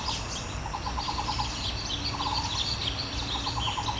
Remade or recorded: recorded